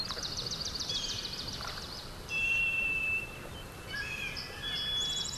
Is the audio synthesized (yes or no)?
yes